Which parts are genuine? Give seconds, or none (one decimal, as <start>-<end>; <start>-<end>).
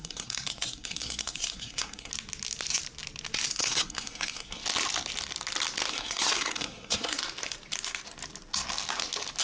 2.1-3.5; 4.6-5.9; 7.2-9.4